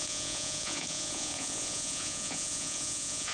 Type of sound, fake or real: fake